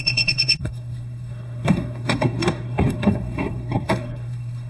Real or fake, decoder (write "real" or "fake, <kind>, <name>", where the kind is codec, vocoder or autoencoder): fake, codec, SNAC